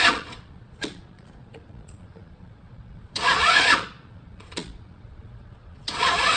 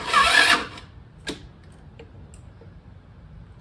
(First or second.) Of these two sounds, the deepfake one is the first